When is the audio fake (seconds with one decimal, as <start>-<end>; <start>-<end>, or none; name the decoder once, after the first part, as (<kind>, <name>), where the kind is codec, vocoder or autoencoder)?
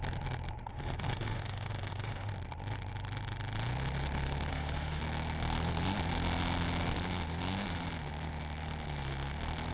0.7-2.3 (autoencoder, DAC-VAE); 4.5-5.0